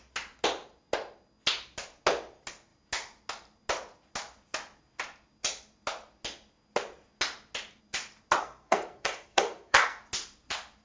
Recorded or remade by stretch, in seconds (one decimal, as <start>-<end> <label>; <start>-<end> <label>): 0.0-8.4 recorded; 8.4-10.0 remade; 10.0-10.8 recorded